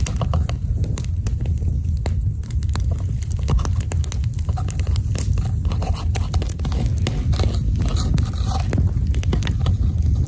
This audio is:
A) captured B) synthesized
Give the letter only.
A